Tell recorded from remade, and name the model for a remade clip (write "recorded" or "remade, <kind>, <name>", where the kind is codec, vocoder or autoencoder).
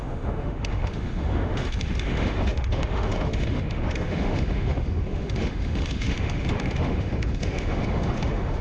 remade, autoencoder, DAC-VAE